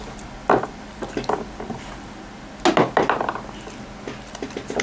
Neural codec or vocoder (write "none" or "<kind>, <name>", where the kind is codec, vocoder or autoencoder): none